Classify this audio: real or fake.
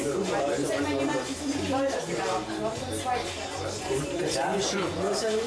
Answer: real